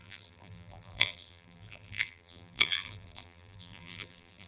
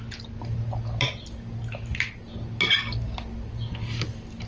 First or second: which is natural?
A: second